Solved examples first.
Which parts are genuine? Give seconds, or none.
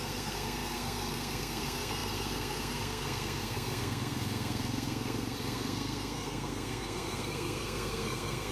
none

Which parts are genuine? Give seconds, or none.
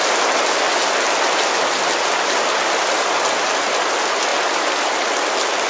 0.0-4.3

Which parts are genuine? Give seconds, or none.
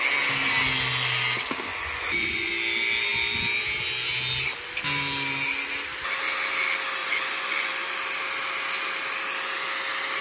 0.0-1.7; 2.5-7.0; 7.8-10.2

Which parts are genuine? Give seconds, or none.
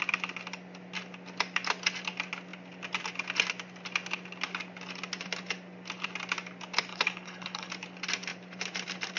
0.0-6.9; 7.7-9.2